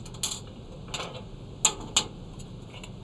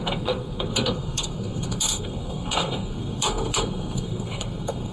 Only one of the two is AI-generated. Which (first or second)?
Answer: second